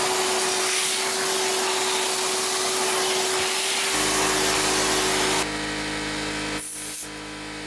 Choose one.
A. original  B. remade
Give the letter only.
A